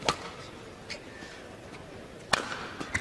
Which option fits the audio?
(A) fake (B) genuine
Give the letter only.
B